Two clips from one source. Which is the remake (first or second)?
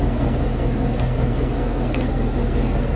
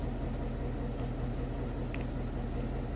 first